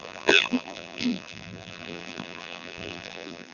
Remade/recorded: remade